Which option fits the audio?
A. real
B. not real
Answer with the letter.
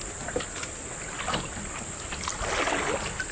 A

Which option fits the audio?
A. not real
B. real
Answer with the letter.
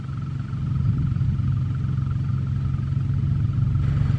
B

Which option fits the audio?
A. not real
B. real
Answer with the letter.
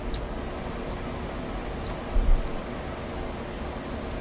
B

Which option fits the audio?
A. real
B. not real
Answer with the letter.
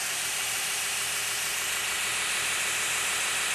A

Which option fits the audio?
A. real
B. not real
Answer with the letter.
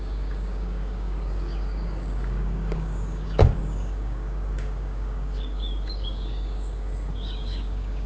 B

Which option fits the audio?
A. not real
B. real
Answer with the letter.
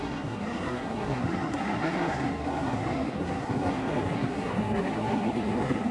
A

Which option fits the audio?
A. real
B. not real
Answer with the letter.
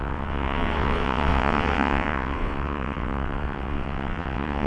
B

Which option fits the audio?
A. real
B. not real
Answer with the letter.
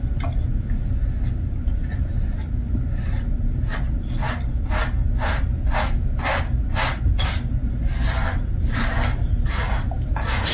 A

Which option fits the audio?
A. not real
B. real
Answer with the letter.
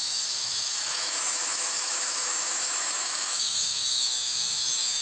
A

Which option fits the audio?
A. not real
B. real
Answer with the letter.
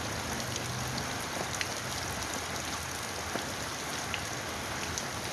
B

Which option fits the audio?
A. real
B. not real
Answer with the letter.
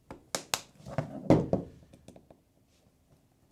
A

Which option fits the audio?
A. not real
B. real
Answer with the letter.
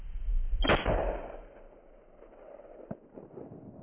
B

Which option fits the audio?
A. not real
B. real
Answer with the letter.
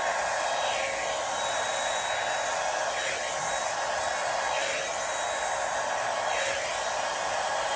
B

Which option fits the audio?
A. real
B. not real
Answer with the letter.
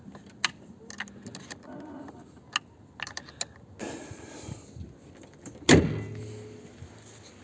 A